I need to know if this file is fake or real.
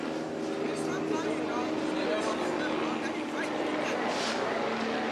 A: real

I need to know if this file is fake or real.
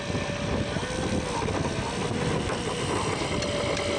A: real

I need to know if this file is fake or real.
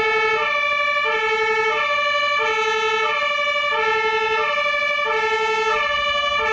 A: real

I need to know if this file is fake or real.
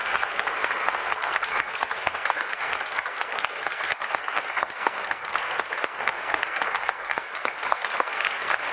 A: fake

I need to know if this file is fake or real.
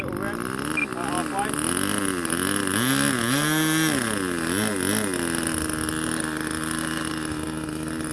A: real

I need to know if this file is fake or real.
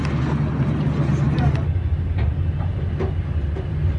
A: real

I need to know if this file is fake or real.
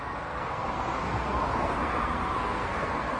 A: fake